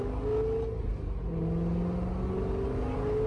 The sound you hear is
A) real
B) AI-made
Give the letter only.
A